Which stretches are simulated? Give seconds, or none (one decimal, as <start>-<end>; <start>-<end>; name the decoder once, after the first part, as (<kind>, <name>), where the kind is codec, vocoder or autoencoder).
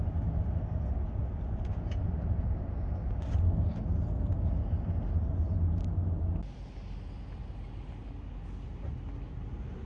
none